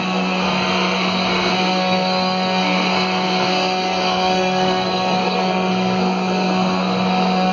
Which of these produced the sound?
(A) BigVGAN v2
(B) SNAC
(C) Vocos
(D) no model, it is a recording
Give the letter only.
B